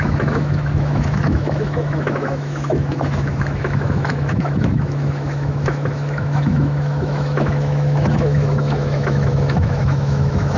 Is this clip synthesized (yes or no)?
yes